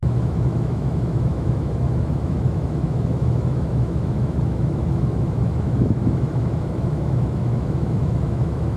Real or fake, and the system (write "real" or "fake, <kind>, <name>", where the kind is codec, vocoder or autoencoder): fake, autoencoder, DAC-VAE